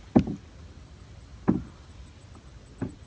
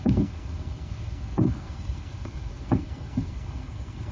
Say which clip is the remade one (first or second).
second